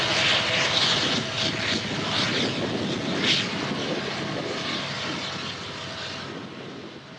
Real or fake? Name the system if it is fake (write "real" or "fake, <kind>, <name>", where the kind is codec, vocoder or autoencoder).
real